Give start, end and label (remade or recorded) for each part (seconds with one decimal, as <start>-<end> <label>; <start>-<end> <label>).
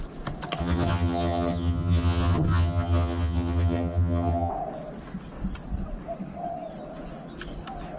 0.0-0.6 recorded; 0.6-4.5 remade; 4.5-8.0 recorded